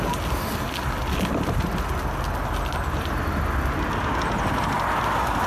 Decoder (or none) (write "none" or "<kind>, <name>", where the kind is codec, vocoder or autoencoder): none